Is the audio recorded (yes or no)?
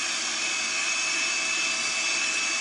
yes